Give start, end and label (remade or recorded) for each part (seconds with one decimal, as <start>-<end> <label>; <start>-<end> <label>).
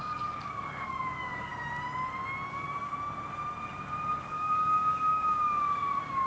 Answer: 0.0-1.5 remade; 1.5-2.5 recorded; 2.5-2.9 remade; 2.9-4.2 recorded; 4.2-6.3 remade